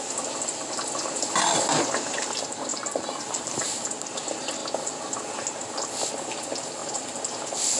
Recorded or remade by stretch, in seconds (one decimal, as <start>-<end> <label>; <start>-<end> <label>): 0.0-2.7 recorded; 2.7-3.8 remade; 3.8-7.8 recorded